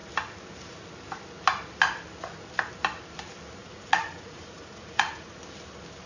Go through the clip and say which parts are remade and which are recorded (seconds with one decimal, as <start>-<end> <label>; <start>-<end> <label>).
0.0-3.6 recorded; 3.6-5.4 remade; 5.4-6.1 recorded